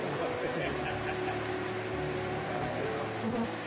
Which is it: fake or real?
real